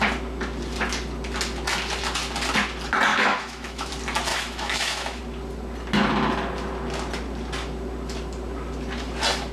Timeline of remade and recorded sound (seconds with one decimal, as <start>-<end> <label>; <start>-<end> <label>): 0.0-3.1 recorded; 3.1-3.9 remade; 3.9-4.3 recorded; 4.3-5.2 remade; 5.2-9.5 recorded